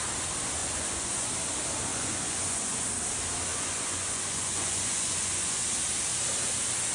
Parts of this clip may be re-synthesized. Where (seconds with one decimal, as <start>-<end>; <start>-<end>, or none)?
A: 0.6-1.3; 1.9-2.9; 3.5-5.6